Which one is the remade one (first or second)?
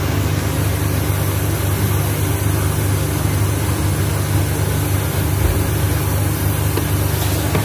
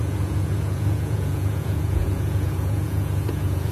second